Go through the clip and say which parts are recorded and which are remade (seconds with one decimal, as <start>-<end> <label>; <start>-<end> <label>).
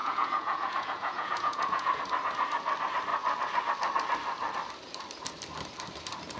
0.0-2.0 remade; 2.0-6.4 recorded